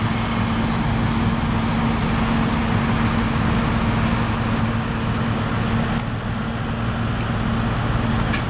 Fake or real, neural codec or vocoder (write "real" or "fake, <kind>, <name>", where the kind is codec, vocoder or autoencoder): real